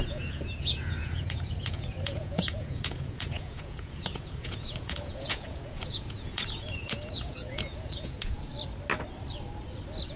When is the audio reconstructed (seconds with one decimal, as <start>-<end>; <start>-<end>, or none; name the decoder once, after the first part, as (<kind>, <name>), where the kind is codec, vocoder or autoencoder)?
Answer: 0.0-8.5 (vocoder, Vocos)